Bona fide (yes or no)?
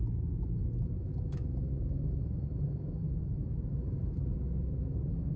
no